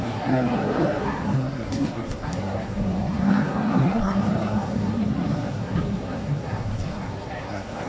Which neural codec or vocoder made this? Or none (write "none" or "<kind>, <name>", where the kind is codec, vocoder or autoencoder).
codec, SNAC